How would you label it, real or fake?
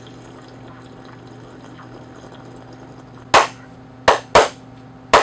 real